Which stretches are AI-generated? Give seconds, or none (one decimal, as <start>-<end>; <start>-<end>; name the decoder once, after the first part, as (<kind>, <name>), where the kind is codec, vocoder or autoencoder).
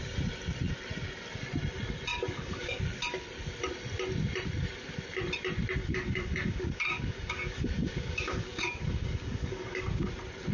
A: 2.1-2.8 (codec, DAC); 5.8-10.1